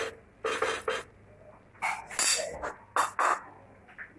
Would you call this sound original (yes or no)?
yes